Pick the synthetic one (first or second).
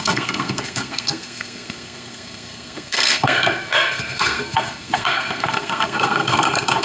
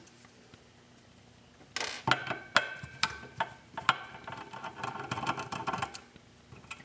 first